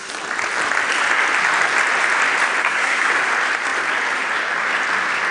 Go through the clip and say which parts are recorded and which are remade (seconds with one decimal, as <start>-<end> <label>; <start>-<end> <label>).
0.0-2.6 recorded; 2.6-3.1 remade; 3.1-5.3 recorded